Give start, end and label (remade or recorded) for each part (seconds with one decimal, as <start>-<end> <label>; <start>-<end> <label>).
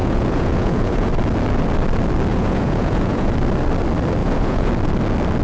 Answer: 0.0-1.1 remade; 1.1-2.3 recorded; 2.3-3.3 remade; 3.3-4.2 recorded; 4.2-4.7 remade; 4.7-5.4 recorded